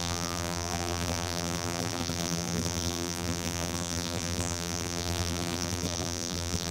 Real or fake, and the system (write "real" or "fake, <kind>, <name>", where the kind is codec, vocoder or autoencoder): fake, vocoder, BigVGAN v2